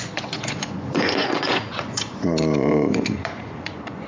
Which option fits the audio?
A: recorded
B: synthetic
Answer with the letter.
B